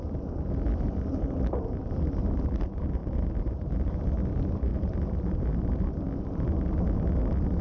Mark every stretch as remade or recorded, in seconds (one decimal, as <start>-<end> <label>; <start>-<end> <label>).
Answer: 0.0-3.0 recorded; 3.0-3.9 remade; 3.9-4.7 recorded; 4.7-5.7 remade; 5.7-7.6 recorded

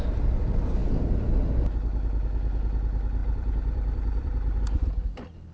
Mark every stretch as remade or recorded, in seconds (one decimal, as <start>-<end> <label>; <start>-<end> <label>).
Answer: 0.0-3.2 recorded; 3.2-4.6 remade; 4.6-5.5 recorded

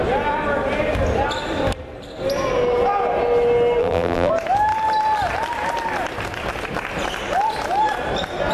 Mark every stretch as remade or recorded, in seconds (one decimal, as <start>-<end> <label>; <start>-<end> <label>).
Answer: 0.0-3.8 recorded; 3.8-4.3 remade; 4.3-8.5 recorded

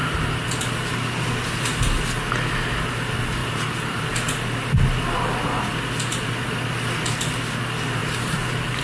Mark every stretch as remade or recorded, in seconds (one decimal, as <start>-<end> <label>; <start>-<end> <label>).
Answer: 0.0-0.6 remade; 0.6-3.4 recorded; 3.4-4.0 remade; 4.0-8.0 recorded; 8.0-8.8 remade